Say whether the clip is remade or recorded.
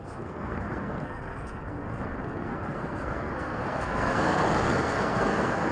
remade